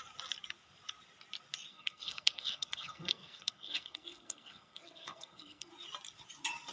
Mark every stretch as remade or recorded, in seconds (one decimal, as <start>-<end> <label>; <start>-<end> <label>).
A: 0.0-1.7 recorded; 1.7-5.7 remade; 5.7-6.7 recorded